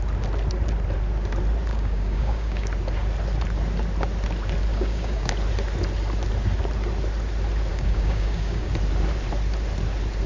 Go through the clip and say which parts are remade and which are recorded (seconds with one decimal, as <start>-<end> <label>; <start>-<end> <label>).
0.0-1.7 recorded; 1.7-2.7 remade; 2.7-4.7 recorded; 4.7-5.3 remade; 5.3-7.7 recorded; 7.7-8.7 remade; 8.7-10.3 recorded